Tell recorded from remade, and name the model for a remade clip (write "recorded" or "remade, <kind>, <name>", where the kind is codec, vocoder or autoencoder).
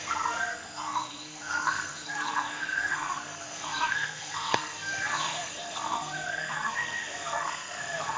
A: remade, codec, SNAC